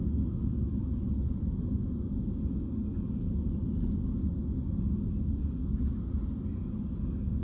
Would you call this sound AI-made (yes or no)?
no